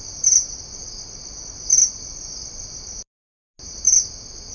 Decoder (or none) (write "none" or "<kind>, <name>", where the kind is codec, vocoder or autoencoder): none